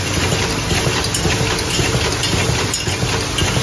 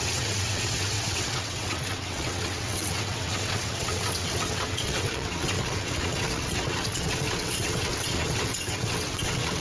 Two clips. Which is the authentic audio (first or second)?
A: first